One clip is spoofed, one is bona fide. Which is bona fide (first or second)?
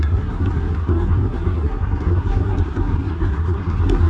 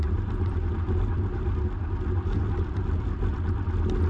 second